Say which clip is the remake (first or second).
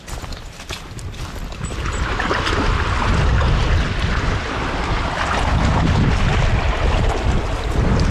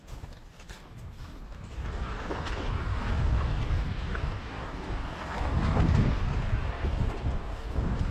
second